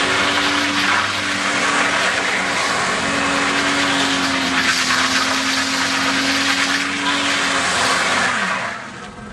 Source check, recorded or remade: recorded